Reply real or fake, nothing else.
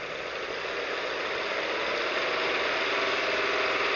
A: real